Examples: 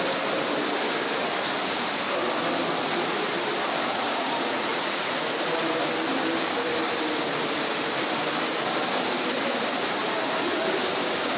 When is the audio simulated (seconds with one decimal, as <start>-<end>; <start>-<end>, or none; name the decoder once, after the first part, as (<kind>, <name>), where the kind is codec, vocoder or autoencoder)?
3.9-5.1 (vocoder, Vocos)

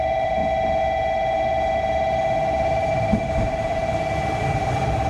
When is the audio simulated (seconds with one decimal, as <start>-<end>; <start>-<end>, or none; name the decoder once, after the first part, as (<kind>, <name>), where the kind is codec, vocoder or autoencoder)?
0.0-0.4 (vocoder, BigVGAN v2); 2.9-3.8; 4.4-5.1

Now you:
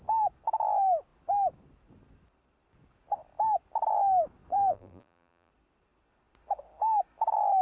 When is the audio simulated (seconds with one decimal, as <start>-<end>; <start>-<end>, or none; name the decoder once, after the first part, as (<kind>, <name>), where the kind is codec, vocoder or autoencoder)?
4.5-5.5 (vocoder, BigVGAN v2)